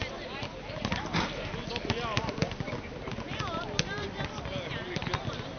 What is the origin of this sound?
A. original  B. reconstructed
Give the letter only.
A